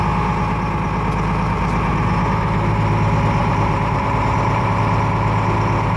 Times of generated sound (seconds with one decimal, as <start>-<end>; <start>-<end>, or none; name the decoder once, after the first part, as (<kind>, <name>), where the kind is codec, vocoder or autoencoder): 3.4-4.8 (vocoder, BigVGAN v2)